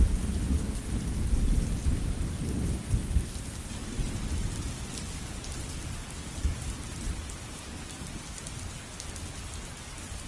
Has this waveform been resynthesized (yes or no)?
no